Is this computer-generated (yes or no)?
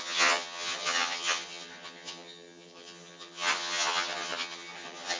yes